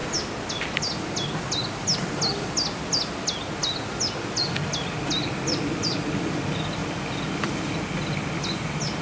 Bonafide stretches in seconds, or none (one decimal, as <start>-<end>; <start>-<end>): 0.0-9.0